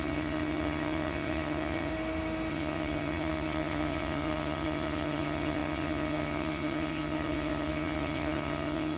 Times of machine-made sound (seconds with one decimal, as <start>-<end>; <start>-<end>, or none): 0.0-1.9; 2.5-9.0